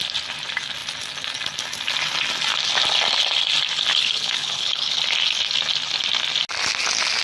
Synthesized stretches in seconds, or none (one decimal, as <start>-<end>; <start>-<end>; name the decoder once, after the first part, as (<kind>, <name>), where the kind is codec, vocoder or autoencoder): 3.9-5.0 (codec, HILCodec)